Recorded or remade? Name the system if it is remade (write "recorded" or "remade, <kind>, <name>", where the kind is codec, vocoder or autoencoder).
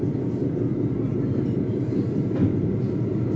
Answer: recorded